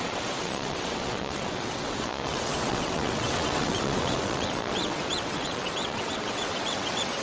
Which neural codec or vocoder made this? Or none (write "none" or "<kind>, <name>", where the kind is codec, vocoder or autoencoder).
vocoder, WaveNeXt